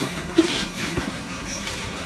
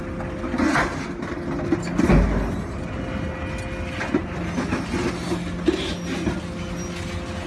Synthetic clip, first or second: first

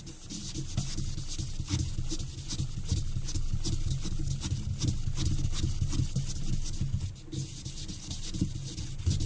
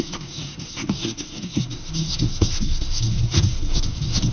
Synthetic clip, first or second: second